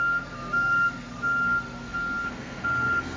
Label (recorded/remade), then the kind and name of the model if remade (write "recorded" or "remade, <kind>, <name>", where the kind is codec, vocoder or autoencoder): remade, codec, SNAC